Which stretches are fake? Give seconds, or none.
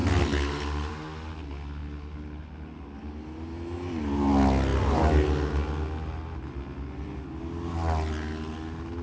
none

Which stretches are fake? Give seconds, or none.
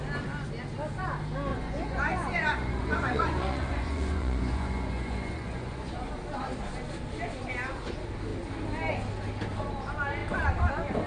1.5-6.1 (vocoder, Vocos)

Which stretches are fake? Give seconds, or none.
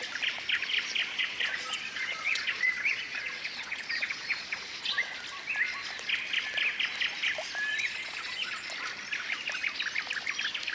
1.0-5.2 (vocoder, Vocos); 7.7-8.7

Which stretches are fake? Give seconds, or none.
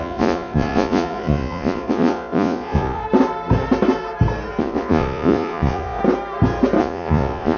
0.0-3.0 (vocoder, Vocos); 4.6-6.0; 6.8-7.6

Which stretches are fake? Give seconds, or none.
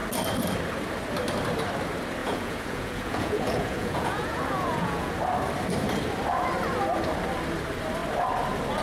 2.2-5.1 (vocoder, Vocos)